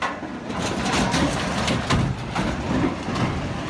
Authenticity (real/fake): real